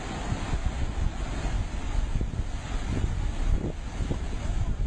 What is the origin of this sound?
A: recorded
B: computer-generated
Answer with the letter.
A